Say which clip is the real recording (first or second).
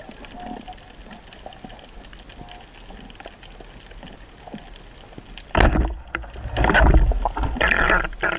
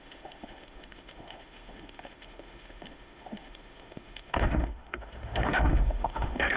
first